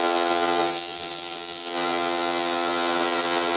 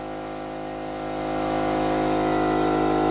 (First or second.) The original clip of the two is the second